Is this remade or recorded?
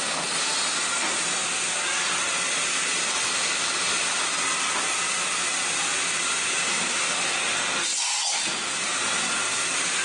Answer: recorded